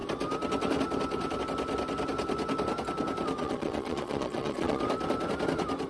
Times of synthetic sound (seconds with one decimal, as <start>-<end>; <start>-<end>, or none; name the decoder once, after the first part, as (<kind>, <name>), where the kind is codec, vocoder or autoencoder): 3.4-4.8 (vocoder, Vocos)